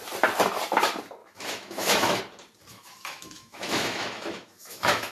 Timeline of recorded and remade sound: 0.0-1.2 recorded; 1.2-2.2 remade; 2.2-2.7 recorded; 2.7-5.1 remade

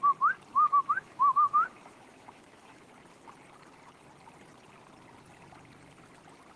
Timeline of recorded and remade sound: 0.0-0.5 recorded; 0.5-2.9 remade; 2.9-6.6 recorded

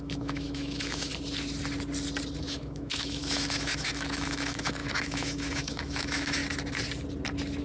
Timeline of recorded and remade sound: 0.0-1.1 remade; 1.1-2.4 recorded; 2.4-6.4 remade; 6.4-7.6 recorded

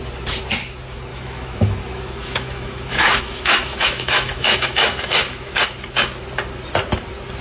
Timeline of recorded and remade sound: 0.0-1.1 recorded; 1.1-5.5 remade; 5.5-7.4 recorded

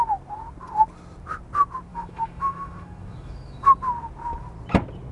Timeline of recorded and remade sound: 0.0-1.9 recorded; 1.9-3.7 remade; 3.7-5.1 recorded

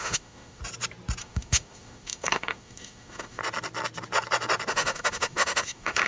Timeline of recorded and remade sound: 0.0-0.6 remade; 0.6-1.2 recorded; 1.2-3.4 remade; 3.4-4.7 recorded; 4.7-6.1 remade